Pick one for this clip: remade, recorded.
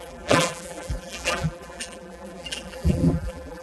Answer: remade